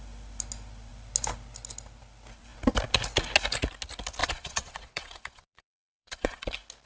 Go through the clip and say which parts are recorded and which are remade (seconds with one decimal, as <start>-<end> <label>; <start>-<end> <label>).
0.0-4.2 recorded; 4.2-6.5 remade; 6.5-6.9 recorded